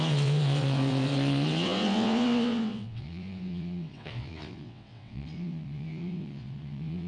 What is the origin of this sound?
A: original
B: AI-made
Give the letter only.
B